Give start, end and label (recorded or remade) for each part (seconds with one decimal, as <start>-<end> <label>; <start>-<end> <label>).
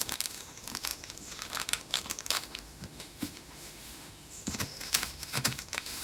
0.0-6.0 remade